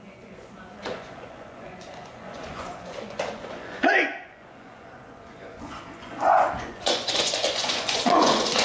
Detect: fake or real fake